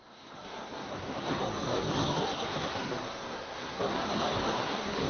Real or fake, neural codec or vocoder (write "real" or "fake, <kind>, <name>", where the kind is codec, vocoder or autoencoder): fake, codec, SNAC